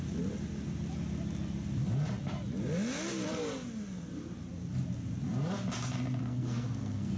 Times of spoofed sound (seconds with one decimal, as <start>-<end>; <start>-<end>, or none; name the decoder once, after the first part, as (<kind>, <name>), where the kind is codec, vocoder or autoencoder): 6.2-7.2 (codec, SNAC)